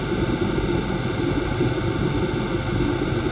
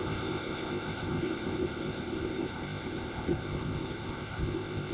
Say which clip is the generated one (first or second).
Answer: second